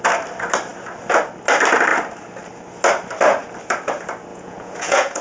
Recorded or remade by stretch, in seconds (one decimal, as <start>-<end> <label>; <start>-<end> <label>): 0.0-4.3 recorded; 4.3-5.2 remade